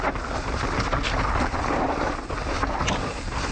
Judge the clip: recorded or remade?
recorded